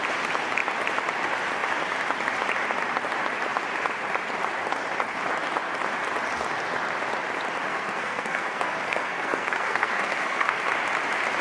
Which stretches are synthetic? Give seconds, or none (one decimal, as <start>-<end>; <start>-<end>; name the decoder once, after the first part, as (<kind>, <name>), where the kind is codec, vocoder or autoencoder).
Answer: 7.7-10.6 (codec, SNAC)